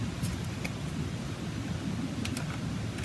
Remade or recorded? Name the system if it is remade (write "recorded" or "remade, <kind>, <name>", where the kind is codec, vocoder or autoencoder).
recorded